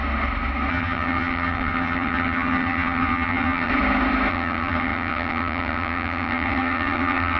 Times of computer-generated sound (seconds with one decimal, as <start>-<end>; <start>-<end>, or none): 0.7-3.7; 4.3-7.4